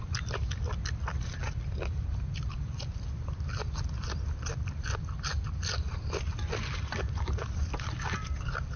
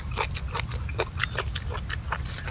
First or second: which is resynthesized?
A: first